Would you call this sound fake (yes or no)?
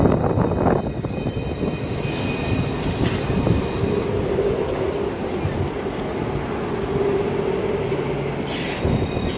no